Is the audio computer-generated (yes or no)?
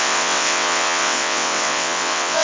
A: yes